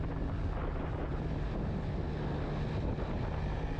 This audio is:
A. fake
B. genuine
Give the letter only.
B